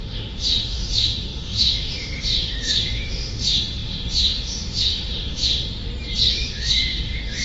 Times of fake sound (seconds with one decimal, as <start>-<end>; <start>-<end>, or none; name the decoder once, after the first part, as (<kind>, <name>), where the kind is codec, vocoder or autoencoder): 0.0-5.7 (autoencoder, DAC-VAE); 6.3-7.4